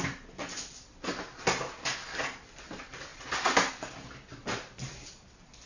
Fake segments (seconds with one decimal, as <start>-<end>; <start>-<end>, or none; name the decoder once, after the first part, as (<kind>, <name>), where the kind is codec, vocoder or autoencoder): 4.4-4.9 (vocoder, BigVGAN v2)